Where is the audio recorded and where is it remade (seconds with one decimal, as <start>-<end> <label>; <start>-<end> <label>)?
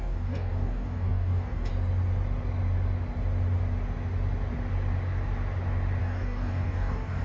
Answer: 0.0-1.7 remade; 1.7-6.0 recorded; 6.0-7.2 remade